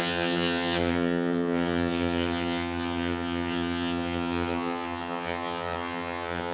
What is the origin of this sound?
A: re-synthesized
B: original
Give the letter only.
A